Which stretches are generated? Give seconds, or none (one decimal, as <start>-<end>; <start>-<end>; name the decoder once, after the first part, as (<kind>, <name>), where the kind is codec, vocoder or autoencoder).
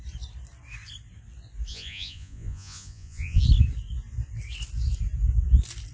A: 1.7-3.4 (vocoder, Vocos)